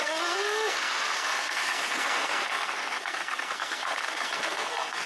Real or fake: fake